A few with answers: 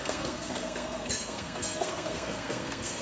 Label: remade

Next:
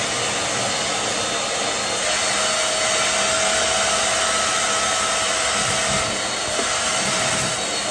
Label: recorded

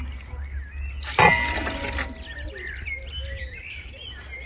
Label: recorded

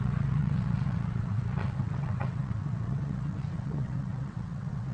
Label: remade